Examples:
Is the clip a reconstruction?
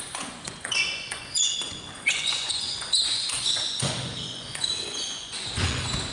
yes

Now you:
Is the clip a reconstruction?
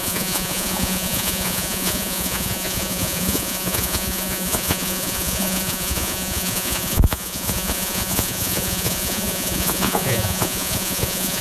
yes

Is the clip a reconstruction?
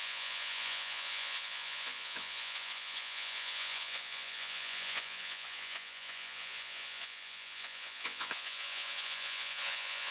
yes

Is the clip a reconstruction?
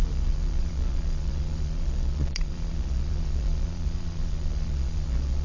yes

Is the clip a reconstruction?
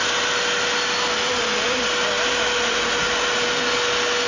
no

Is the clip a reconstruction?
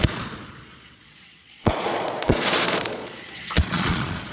yes